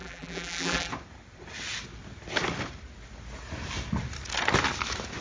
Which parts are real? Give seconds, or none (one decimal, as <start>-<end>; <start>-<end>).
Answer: 0.9-5.2